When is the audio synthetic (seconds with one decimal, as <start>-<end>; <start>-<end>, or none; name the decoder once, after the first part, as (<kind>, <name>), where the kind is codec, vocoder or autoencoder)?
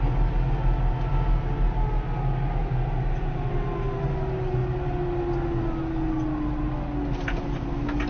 none